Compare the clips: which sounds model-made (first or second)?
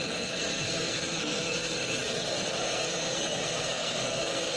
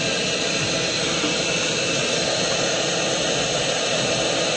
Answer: first